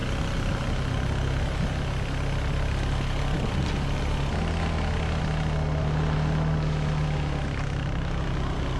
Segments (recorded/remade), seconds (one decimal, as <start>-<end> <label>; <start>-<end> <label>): 0.0-8.8 recorded